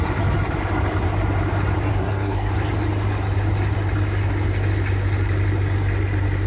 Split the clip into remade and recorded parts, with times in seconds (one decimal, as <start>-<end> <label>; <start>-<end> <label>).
0.0-1.9 recorded; 1.9-2.5 remade; 2.5-6.5 recorded